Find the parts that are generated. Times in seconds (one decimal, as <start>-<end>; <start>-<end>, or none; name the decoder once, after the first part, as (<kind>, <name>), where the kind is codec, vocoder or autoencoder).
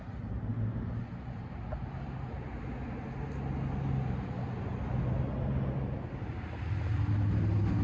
none